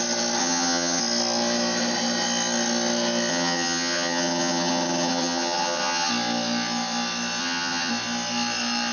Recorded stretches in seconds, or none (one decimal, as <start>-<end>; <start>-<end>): 0.0-0.4; 1.0-3.3; 6.1-7.4; 7.9-8.9